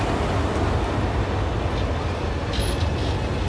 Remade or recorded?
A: recorded